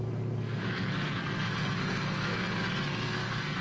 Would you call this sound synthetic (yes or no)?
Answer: yes